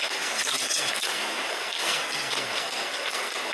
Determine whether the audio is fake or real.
fake